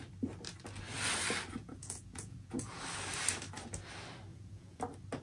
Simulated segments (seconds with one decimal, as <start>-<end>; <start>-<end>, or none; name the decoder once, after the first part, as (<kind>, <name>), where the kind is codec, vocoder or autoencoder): 1.6-2.8 (vocoder, Vocos); 4.3-4.8

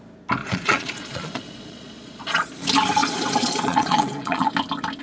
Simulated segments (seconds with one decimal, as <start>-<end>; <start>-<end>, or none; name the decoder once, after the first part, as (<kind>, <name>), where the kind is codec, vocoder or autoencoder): 0.4-2.5 (vocoder, Vocos); 3.0-4.5

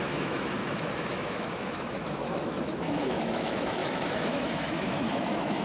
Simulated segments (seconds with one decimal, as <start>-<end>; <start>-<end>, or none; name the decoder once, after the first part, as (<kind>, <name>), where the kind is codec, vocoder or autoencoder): 0.0-5.6 (autoencoder, DAC-VAE)

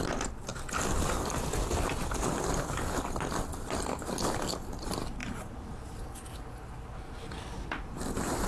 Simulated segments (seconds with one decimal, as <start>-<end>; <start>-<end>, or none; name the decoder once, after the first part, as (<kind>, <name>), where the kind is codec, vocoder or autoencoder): none

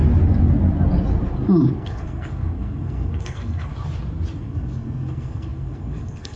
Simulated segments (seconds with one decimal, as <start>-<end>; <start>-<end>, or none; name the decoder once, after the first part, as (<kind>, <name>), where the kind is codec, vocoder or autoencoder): 1.7-3.7 (codec, SNAC); 4.4-6.4

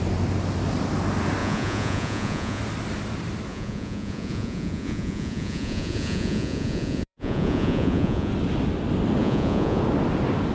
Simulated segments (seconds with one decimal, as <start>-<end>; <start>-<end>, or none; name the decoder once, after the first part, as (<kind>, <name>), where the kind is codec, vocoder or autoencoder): 1.4-2.6 (vocoder, Vocos); 3.5-8.3; 9.2-9.8